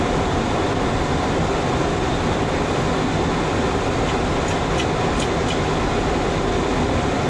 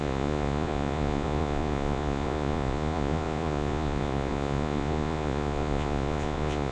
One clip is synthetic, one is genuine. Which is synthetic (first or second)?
second